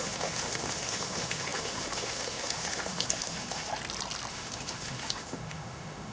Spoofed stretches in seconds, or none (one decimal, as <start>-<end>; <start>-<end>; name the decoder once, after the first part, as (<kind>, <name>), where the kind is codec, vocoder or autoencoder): 0.0-3.7 (autoencoder, DAC-VAE); 4.3-6.1